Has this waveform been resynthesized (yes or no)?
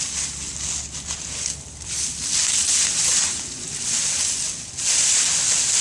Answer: no